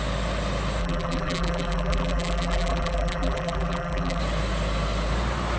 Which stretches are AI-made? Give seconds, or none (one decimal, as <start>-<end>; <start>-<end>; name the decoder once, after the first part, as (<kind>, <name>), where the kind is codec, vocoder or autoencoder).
0.8-4.2 (vocoder, BigVGAN v2)